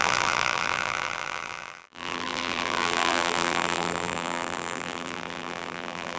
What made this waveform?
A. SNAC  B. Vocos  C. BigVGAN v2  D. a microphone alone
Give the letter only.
C